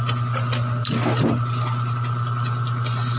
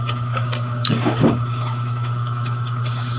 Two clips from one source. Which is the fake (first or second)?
second